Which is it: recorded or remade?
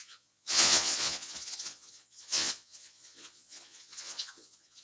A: remade